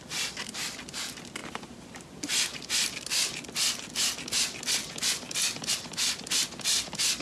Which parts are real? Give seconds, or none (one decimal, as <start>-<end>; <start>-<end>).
0.0-7.2